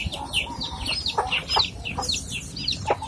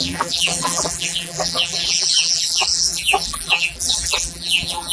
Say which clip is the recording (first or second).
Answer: first